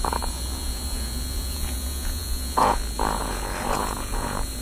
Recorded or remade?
remade